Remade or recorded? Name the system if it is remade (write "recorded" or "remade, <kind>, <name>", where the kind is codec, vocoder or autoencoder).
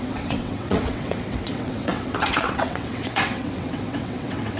remade, vocoder, WaveNeXt